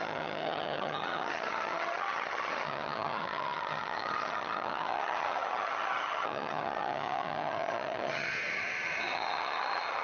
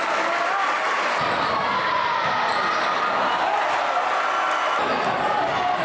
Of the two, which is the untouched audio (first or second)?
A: second